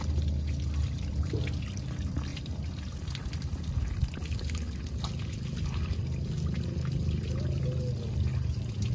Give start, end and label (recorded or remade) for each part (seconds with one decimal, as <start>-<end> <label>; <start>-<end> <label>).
0.0-8.9 recorded